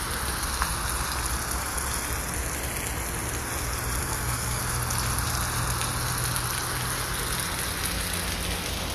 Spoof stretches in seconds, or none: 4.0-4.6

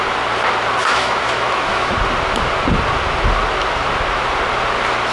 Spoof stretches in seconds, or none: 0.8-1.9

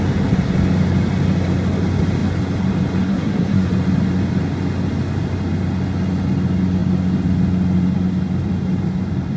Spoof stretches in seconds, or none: 3.1-3.7

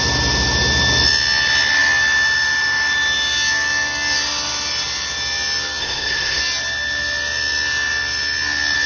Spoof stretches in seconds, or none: 5.8-6.4